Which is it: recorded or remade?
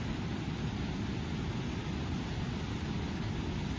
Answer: recorded